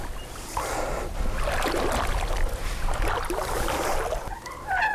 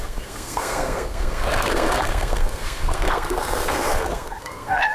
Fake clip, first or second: second